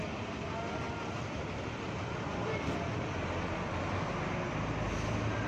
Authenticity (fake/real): real